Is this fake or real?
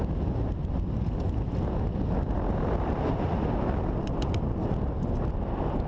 real